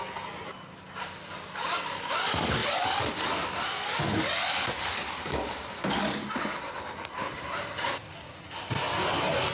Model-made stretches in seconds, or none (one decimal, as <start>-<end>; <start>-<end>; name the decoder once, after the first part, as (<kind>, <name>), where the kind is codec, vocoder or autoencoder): none